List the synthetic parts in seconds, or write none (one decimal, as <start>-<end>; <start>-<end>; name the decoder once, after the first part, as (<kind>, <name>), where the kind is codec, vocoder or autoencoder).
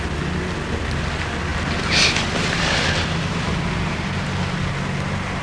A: 1.5-4.7 (vocoder, BigVGAN v2)